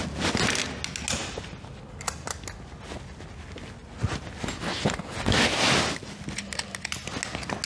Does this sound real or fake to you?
real